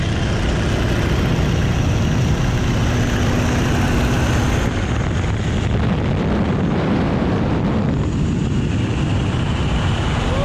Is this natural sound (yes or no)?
yes